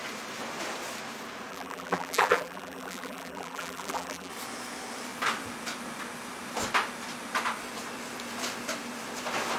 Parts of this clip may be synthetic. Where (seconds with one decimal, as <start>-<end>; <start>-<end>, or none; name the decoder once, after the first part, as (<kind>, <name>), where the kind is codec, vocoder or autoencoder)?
1.5-4.3 (vocoder, BigVGAN v2)